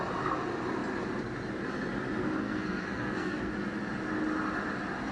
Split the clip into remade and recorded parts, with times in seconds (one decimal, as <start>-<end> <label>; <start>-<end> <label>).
0.0-2.2 recorded; 2.2-3.5 remade; 3.5-5.1 recorded